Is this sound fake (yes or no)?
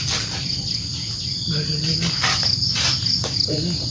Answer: no